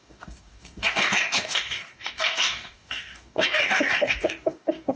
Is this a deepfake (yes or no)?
yes